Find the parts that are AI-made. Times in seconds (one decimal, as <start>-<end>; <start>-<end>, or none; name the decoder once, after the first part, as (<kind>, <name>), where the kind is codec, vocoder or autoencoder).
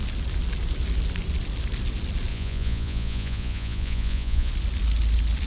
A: 2.3-4.5 (vocoder, Vocos)